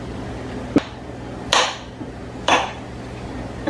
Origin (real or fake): real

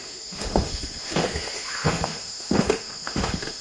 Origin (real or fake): fake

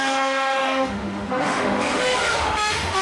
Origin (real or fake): fake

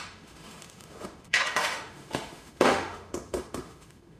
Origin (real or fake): fake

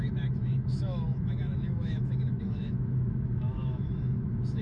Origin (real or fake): fake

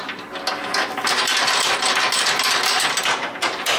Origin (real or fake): real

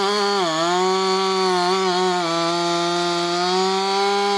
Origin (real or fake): real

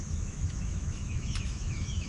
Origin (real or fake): fake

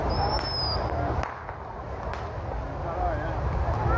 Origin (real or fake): real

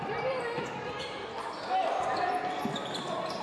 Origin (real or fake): real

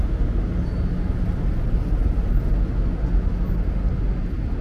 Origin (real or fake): real